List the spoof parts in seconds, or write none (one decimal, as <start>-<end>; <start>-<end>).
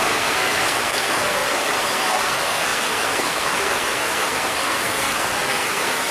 0.0-6.1